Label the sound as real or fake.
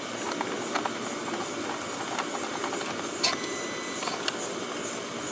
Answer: real